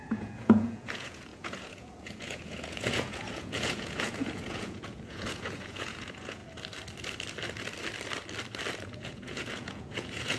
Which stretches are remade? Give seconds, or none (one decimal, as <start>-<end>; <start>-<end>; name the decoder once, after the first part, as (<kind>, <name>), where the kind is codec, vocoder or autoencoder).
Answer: 0.0-6.4 (vocoder, Vocos); 8.8-10.4